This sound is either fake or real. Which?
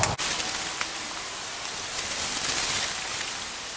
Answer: real